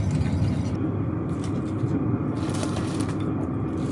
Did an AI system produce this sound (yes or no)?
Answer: no